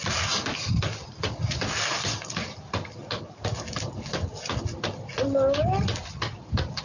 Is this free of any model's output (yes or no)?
yes